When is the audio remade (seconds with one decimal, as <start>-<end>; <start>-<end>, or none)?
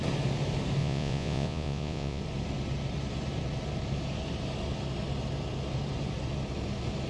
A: 0.8-2.2